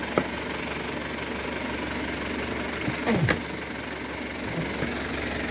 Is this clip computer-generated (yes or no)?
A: no